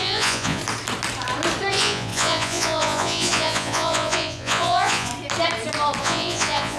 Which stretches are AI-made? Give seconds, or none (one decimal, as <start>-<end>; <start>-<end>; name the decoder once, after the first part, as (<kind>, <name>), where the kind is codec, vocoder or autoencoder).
0.0-0.6 (vocoder, Vocos); 1.7-5.1; 6.0-6.8